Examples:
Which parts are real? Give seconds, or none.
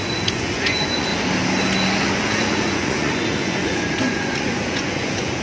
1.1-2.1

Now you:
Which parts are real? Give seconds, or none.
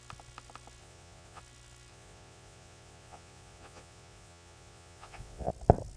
0.0-0.8; 1.4-1.9; 5.5-6.0